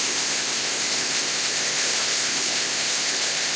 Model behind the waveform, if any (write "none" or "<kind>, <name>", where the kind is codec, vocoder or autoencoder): codec, ZipCodec